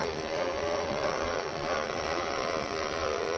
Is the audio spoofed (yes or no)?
yes